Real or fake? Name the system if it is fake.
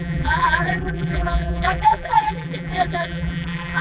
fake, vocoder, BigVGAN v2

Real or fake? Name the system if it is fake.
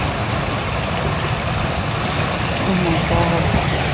real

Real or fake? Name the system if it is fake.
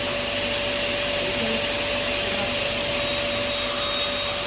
real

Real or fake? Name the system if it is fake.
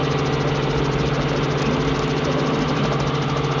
real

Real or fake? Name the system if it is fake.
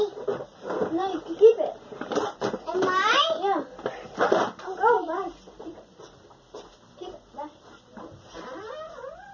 fake, vocoder, BigVGAN v2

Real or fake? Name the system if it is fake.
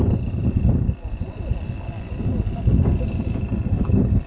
fake, vocoder, BigVGAN v2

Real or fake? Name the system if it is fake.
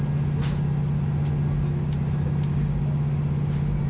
real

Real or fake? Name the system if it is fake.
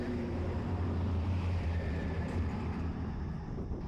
fake, vocoder, BigVGAN v2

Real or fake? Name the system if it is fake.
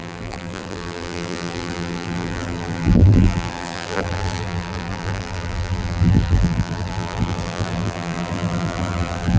fake, vocoder, BigVGAN v2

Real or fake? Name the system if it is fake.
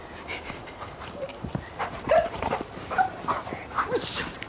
fake, vocoder, BigVGAN v2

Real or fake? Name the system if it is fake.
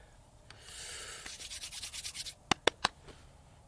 real